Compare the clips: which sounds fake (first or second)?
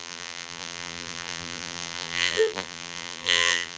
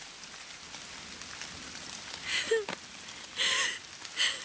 first